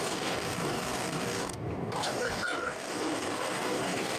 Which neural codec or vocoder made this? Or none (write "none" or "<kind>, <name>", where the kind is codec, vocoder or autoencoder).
codec, DAC